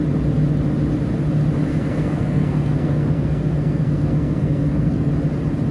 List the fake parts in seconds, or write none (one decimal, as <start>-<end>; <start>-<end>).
1.7-5.1